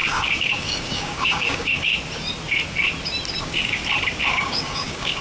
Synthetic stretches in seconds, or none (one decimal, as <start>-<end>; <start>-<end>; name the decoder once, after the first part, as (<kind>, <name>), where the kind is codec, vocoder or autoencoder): 0.0-1.9 (codec, DAC); 3.4-3.8; 4.3-5.2